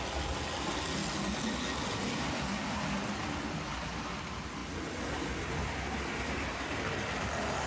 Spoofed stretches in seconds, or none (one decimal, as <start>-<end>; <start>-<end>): none